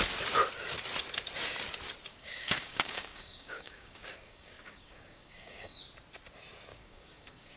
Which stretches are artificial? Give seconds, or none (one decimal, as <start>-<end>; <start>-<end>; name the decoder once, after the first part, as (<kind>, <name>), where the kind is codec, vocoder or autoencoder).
2.1-5.8 (codec, DAC); 6.7-7.6